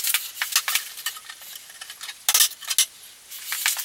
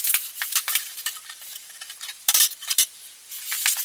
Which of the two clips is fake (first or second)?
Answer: second